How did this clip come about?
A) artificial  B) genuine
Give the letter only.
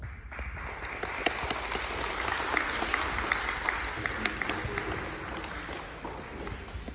B